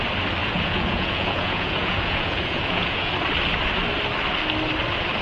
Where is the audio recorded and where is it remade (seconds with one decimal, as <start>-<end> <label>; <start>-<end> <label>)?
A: 0.0-0.4 recorded; 0.4-3.1 remade; 3.1-5.2 recorded